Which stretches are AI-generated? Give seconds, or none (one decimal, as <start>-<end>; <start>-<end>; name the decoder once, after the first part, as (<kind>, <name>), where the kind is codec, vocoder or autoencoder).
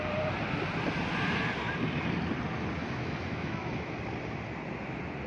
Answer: 2.8-4.0 (autoencoder, DAC-VAE)